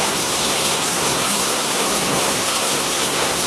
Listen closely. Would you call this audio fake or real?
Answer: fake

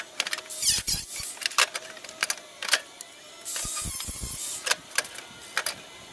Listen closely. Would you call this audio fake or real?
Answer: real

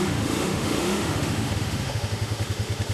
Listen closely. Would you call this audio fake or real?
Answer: fake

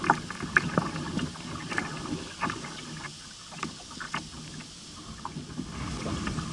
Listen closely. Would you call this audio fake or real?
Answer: real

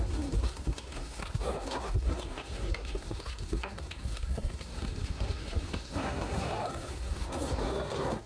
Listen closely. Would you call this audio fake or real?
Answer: fake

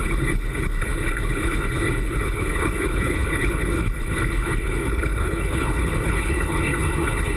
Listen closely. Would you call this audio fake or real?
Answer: fake